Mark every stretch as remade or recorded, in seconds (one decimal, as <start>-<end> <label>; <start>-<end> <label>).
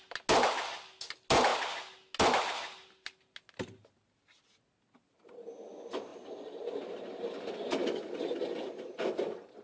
0.0-9.6 recorded